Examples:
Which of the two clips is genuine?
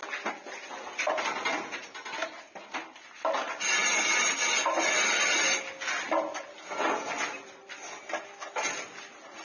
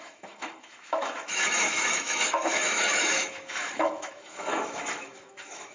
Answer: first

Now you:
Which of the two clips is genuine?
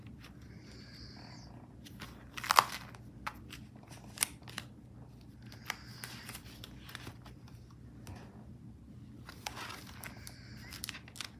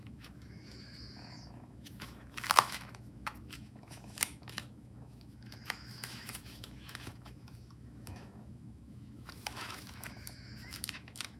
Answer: first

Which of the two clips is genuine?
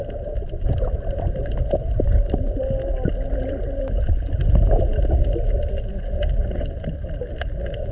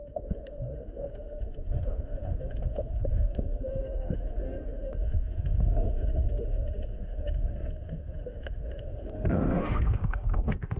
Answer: first